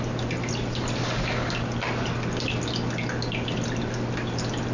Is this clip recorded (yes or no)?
yes